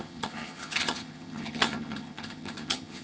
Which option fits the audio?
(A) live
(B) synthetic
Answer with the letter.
B